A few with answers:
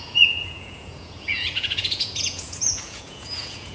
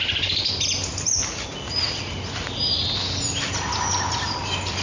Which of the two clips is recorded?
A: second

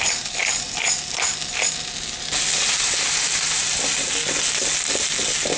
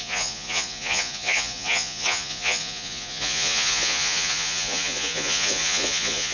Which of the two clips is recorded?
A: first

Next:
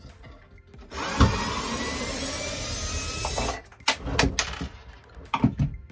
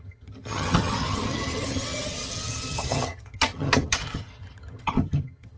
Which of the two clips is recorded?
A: first